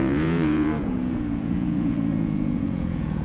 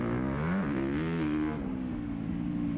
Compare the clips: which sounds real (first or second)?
second